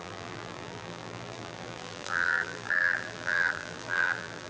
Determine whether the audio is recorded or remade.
remade